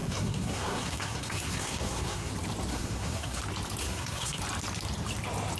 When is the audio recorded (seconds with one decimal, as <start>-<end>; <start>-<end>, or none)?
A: 2.3-2.7; 3.4-3.8; 4.4-5.6